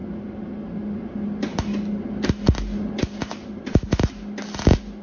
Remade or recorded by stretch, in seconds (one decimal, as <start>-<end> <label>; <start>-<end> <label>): 0.0-5.0 recorded